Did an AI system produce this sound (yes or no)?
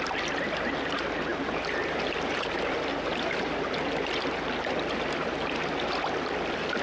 no